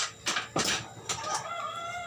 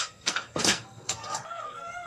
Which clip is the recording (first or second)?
first